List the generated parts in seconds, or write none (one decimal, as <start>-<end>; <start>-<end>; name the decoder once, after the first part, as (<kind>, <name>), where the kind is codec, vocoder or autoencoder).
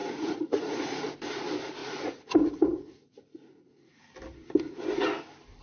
0.0-1.1 (vocoder, Vocos); 1.8-4.0